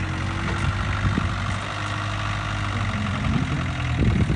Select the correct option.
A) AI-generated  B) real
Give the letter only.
B